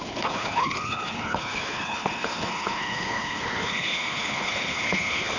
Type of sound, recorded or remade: remade